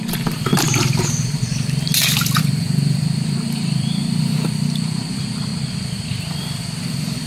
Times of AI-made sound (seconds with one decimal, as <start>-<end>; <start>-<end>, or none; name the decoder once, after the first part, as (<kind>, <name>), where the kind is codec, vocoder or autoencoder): 0.0-0.5 (vocoder, BigVGAN v2); 2.4-5.5; 6.6-7.3